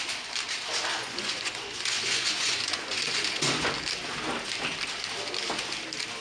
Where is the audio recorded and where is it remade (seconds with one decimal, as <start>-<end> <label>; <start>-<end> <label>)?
0.0-0.9 recorded; 0.9-3.7 remade; 3.7-6.2 recorded